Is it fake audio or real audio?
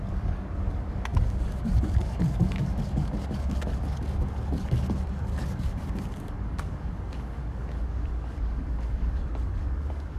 fake